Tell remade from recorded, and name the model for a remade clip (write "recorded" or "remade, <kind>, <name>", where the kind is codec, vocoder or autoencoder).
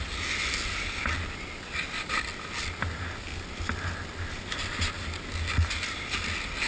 recorded